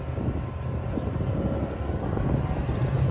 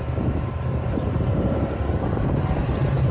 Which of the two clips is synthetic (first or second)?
second